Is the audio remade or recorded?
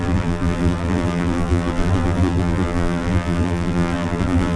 remade